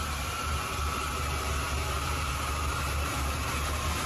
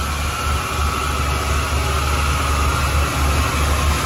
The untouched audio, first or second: second